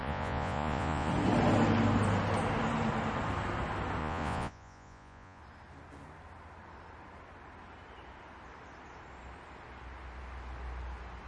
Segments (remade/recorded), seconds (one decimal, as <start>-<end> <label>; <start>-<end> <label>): 0.0-1.1 remade; 1.1-4.0 recorded; 4.0-5.4 remade; 5.4-11.3 recorded